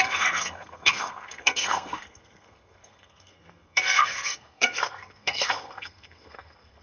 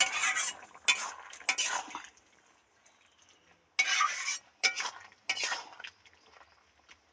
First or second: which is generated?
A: first